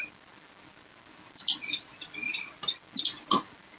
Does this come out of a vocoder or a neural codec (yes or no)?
no